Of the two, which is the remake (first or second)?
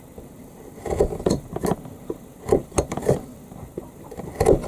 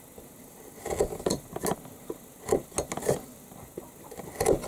first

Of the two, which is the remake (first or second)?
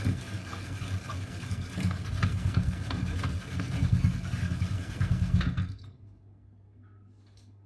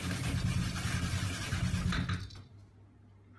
first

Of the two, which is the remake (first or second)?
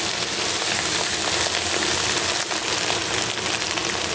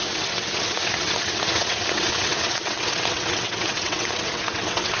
second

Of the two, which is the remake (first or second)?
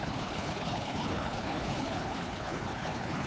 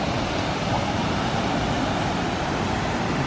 first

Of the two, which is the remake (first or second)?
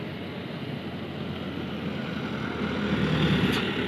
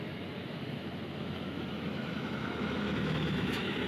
second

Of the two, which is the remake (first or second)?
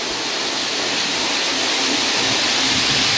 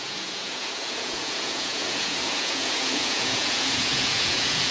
second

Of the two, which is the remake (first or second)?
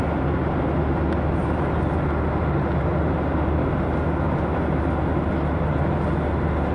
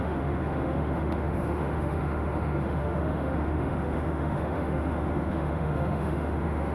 second